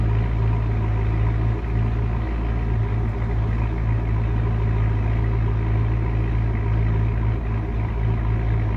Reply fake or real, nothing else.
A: real